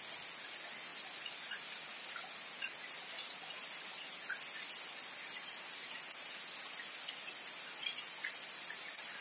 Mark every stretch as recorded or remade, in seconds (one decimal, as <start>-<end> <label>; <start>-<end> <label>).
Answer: 0.0-9.2 recorded